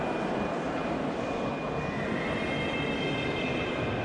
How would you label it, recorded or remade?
recorded